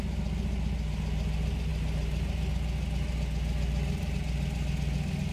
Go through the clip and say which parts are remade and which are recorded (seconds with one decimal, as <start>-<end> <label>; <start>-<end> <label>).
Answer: 0.0-5.3 recorded